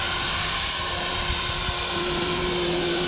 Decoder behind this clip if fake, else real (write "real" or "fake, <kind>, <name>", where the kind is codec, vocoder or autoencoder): fake, vocoder, BigVGAN v2